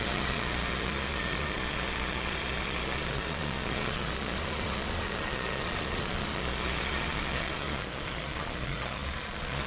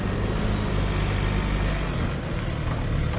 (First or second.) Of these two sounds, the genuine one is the second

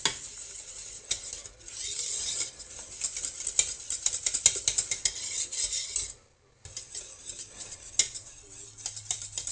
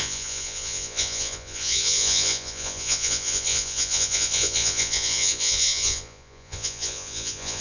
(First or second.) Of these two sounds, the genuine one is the first